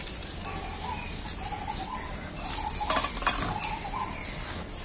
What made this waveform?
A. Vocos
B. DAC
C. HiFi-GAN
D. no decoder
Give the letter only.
D